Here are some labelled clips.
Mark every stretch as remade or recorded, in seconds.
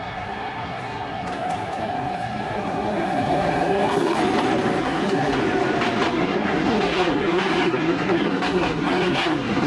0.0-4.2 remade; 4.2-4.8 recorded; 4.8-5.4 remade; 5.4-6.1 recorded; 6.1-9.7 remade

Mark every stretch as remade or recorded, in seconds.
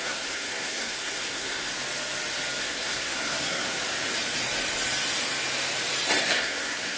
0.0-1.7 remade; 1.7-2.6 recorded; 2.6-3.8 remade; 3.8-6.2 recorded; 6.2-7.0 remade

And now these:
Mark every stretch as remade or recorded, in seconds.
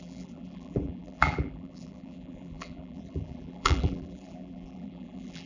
0.0-5.5 remade